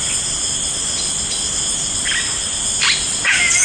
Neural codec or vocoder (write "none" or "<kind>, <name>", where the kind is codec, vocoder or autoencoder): none